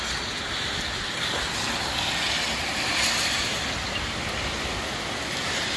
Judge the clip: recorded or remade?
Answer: recorded